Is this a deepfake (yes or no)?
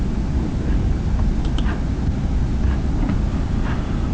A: no